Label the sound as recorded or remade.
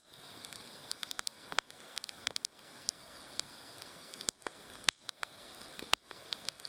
remade